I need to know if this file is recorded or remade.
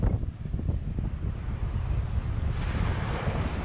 recorded